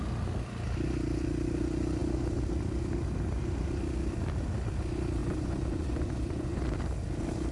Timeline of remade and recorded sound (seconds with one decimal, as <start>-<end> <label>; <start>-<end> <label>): 0.0-5.2 recorded; 5.2-6.6 remade; 6.6-7.5 recorded